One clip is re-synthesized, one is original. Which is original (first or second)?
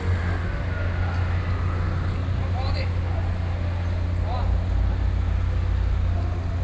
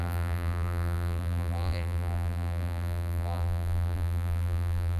first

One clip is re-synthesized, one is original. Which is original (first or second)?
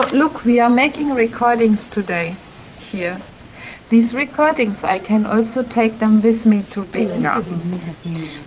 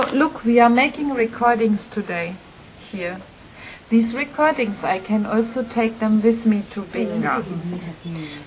second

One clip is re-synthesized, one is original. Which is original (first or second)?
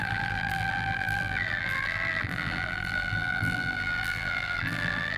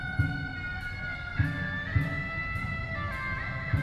second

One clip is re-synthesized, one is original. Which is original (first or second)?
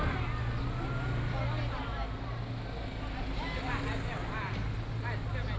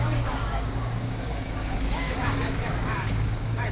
first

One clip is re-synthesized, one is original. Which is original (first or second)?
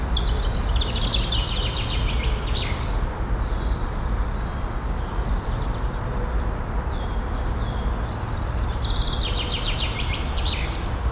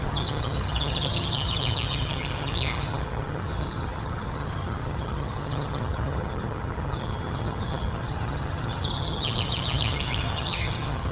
first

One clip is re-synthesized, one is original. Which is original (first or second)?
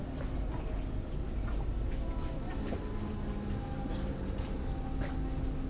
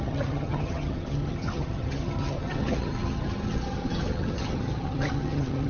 first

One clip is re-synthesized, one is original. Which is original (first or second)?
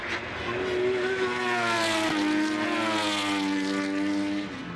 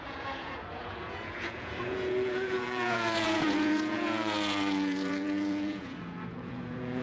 first